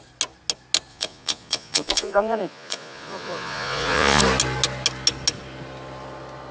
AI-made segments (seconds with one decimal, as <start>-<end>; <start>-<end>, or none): 0.9-4.2

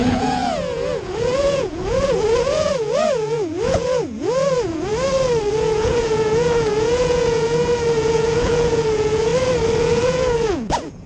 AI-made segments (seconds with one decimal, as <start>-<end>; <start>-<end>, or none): 0.0-4.9; 5.5-9.3; 9.8-11.1